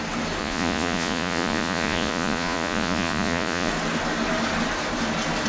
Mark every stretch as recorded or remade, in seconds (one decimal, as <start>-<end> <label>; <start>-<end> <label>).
0.0-0.4 recorded; 0.4-3.7 remade; 3.7-5.5 recorded